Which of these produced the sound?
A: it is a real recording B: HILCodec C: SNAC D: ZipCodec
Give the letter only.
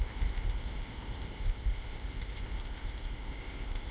D